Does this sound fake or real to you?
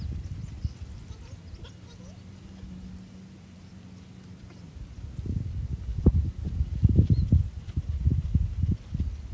real